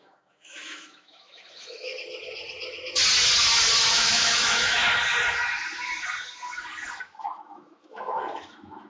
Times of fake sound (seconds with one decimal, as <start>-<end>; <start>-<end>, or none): 0.0-1.9; 3.9-4.8; 7.0-8.9